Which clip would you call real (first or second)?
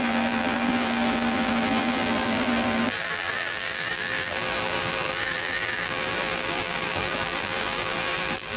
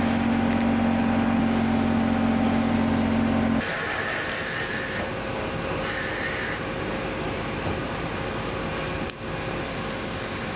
second